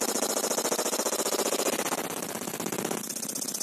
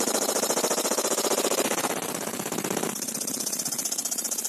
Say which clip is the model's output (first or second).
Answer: second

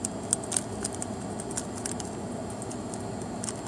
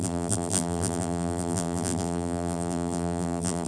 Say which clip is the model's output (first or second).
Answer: second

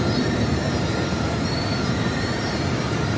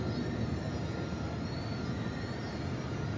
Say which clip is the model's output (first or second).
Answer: first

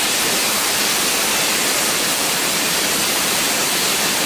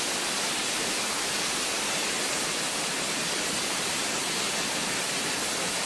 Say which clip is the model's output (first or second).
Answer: first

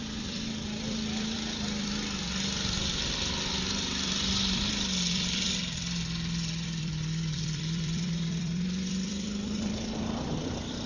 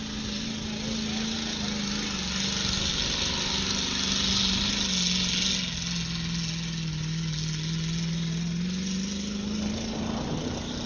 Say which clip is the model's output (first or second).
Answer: first